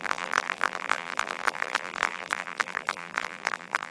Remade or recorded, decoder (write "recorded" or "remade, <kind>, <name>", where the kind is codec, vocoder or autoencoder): remade, vocoder, BigVGAN v2